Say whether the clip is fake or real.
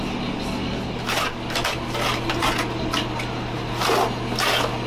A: real